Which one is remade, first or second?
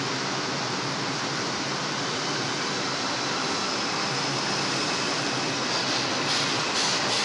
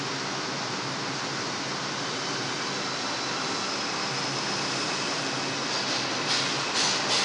first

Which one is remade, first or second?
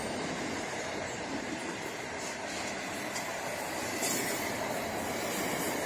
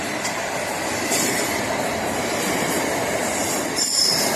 second